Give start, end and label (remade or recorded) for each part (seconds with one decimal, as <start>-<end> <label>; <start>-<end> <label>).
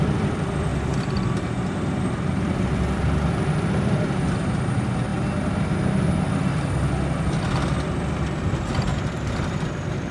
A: 0.0-5.1 remade; 5.1-8.1 recorded; 8.1-8.9 remade; 8.9-9.6 recorded; 9.6-10.1 remade